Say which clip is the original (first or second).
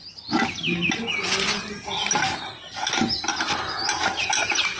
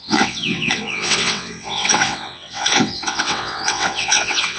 first